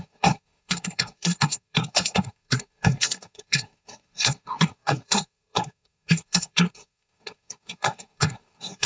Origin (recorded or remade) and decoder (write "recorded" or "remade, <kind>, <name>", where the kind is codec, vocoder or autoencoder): remade, codec, SNAC